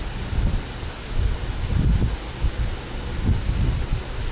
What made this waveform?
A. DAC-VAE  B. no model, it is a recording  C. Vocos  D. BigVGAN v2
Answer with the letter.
B